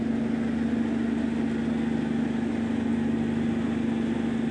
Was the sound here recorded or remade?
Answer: recorded